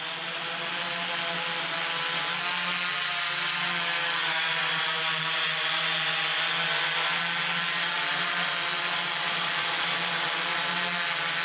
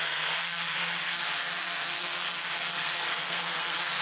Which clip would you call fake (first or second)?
second